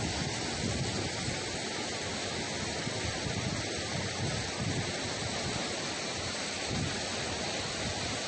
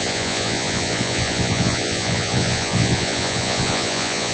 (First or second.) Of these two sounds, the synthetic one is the second